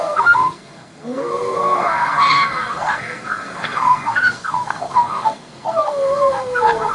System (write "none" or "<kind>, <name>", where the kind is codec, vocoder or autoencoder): codec, SNAC